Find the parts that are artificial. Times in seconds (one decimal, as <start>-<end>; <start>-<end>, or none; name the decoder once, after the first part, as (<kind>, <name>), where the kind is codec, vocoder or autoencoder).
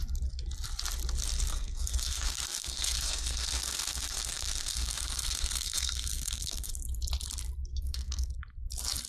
1.5-6.7 (codec, SNAC); 7.7-8.3